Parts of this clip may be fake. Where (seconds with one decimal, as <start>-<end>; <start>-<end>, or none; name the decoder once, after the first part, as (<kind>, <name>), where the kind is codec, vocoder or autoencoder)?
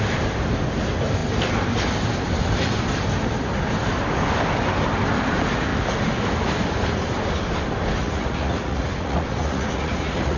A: 8.0-10.4 (vocoder, Vocos)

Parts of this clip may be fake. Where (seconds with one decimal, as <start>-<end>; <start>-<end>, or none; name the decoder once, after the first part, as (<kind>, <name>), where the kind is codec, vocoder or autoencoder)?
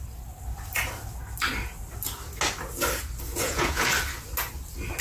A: 3.3-3.9 (vocoder, Vocos)